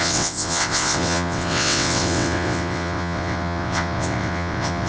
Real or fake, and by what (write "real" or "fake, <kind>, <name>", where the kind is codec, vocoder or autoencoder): fake, vocoder, WaveNeXt